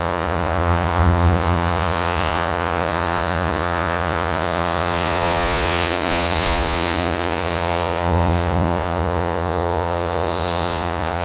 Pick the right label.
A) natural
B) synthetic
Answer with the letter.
B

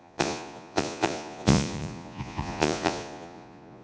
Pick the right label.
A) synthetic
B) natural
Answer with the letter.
A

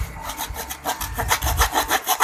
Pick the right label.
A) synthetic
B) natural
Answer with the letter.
B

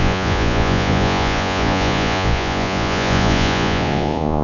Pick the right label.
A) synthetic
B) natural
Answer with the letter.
A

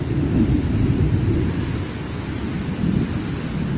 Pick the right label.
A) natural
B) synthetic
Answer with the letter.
A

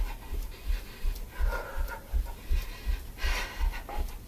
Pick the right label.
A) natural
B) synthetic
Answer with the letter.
A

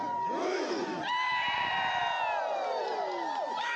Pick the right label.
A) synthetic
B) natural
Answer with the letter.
B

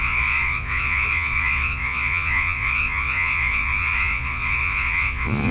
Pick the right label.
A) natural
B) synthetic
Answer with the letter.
B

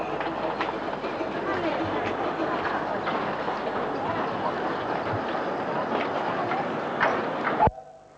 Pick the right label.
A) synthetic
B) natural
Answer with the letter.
B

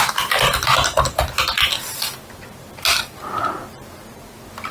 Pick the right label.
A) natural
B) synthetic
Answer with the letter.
A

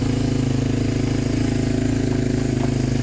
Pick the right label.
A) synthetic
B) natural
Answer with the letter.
B